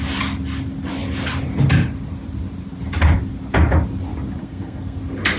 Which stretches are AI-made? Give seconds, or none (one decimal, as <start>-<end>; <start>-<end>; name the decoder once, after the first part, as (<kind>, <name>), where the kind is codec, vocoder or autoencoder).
4.4-5.0 (codec, SNAC)